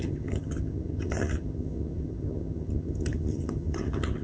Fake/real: fake